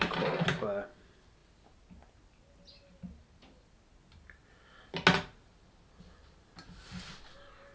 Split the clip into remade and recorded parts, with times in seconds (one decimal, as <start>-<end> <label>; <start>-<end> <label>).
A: 0.0-7.7 recorded